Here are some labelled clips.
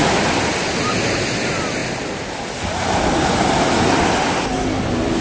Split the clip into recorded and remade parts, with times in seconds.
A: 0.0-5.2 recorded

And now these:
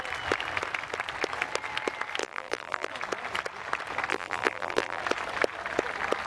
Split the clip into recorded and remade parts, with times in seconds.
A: 0.0-2.2 recorded; 2.2-2.9 remade; 2.9-4.1 recorded; 4.1-5.0 remade; 5.0-6.3 recorded

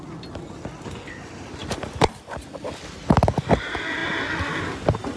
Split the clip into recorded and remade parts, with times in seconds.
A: 0.0-5.2 recorded